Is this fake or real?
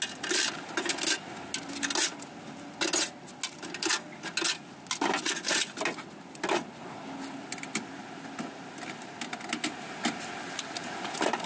real